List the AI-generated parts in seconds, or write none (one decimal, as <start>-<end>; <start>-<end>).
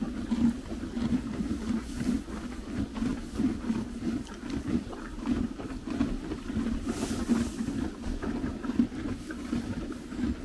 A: none